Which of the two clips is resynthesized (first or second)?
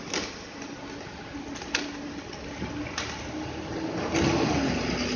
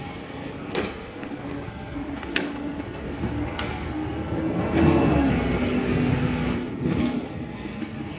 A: second